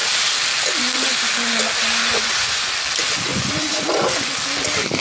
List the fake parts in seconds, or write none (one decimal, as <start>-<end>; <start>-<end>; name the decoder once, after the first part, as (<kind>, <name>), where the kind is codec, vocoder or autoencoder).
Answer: 2.1-2.7 (vocoder, Vocos); 3.3-4.3